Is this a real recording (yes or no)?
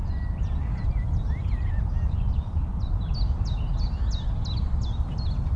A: yes